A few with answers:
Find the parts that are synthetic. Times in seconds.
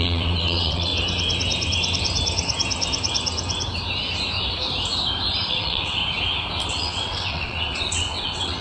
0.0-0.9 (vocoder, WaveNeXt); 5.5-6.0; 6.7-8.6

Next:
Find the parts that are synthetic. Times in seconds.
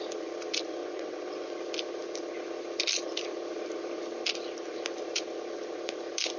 0.8-1.5 (vocoder, WaveNeXt)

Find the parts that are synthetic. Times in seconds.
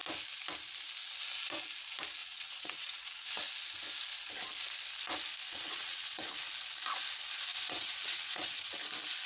2.2-3.5 (vocoder, WaveNeXt); 5.4-6.3; 7.5-8.8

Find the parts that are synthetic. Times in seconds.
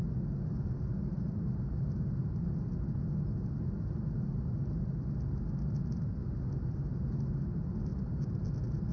none